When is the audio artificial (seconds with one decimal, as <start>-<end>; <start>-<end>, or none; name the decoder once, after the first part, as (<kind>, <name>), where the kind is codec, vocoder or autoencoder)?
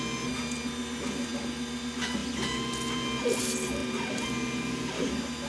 none